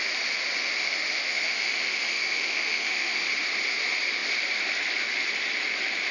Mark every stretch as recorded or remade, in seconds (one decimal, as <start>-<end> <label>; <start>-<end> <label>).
0.0-0.6 recorded; 0.6-3.3 remade; 3.3-6.1 recorded

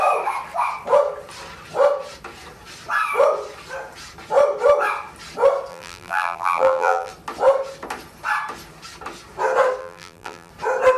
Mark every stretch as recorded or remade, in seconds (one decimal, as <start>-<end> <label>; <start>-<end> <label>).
0.0-5.7 recorded; 5.7-7.1 remade; 7.1-9.8 recorded; 9.8-10.5 remade; 10.5-11.0 recorded

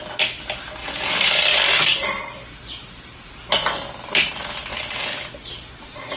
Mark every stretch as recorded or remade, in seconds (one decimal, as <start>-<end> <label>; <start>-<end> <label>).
0.0-6.2 recorded

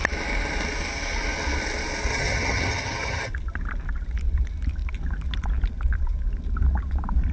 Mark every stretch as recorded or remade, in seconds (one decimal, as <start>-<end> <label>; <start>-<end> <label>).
0.0-2.1 recorded; 2.1-3.3 remade; 3.3-7.3 recorded

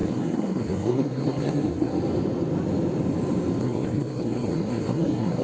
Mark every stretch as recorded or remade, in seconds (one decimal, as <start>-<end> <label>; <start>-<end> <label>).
0.0-1.9 remade; 1.9-3.6 recorded; 3.6-5.4 remade

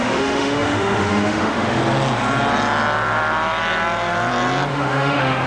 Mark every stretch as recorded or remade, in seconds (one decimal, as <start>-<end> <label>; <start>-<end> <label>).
0.0-1.8 remade; 1.8-4.7 recorded; 4.7-5.5 remade

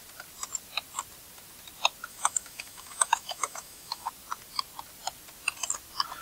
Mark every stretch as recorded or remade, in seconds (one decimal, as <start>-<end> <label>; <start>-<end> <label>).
0.0-2.1 recorded; 2.1-4.1 remade; 4.1-6.2 recorded